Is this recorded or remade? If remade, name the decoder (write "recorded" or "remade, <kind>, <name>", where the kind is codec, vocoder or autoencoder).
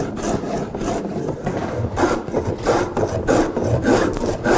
recorded